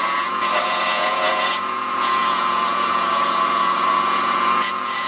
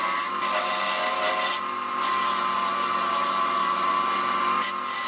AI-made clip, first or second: first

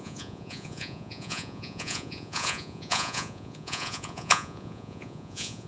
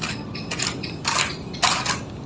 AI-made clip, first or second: first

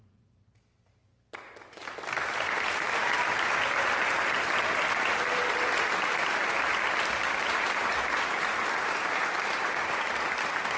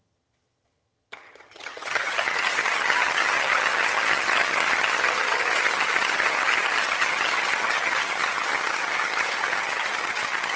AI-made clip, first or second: second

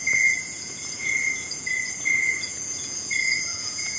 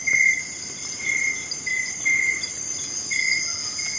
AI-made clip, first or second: first